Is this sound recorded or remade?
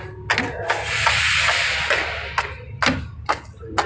recorded